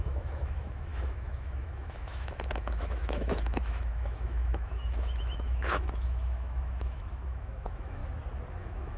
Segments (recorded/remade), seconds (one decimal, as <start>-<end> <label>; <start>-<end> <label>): 0.0-8.0 remade; 8.0-8.5 recorded; 8.5-9.0 remade